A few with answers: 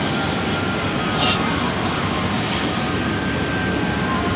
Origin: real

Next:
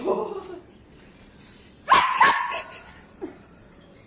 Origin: real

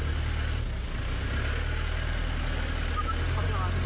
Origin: real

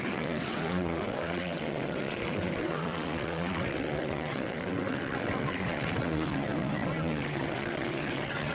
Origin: fake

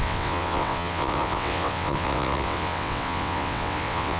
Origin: fake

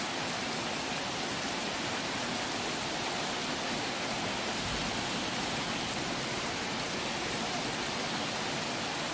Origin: real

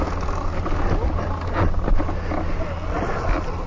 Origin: real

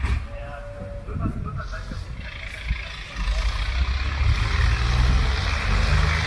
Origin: real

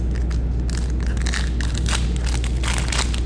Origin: real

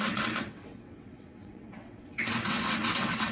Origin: fake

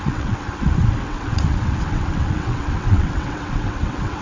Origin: fake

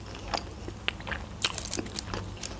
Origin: real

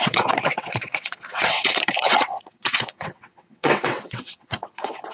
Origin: fake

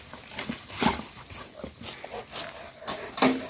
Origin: real